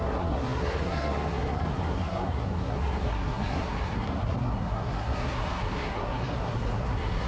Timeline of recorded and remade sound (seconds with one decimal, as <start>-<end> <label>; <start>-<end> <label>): 0.0-7.3 remade